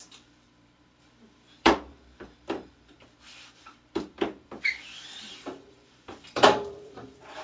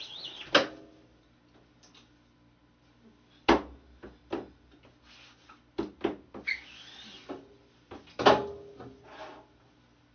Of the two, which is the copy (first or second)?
first